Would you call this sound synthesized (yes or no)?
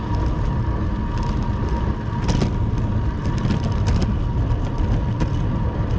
no